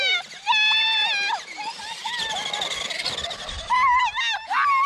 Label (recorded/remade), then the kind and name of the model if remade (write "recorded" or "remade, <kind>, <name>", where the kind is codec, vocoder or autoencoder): recorded